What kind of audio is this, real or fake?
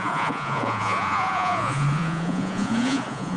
fake